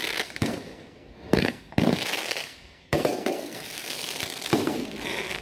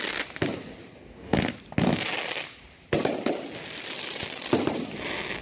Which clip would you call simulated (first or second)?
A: first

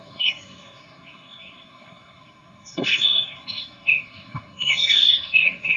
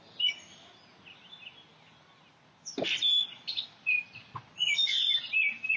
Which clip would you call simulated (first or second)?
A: first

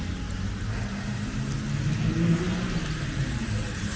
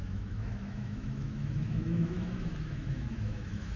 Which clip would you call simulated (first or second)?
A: second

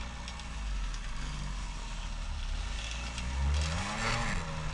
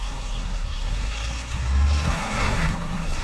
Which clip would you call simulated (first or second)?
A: second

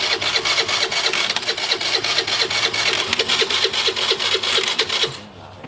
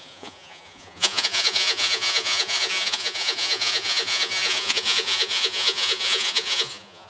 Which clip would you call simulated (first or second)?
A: second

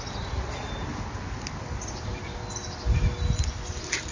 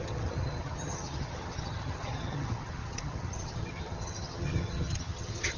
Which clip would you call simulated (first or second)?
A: second